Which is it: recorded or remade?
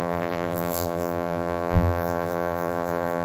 remade